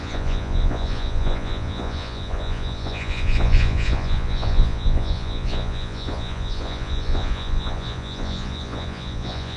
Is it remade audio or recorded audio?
remade